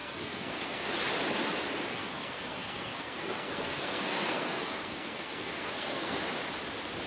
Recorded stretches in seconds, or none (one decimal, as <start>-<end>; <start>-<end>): 0.9-1.9; 6.2-7.1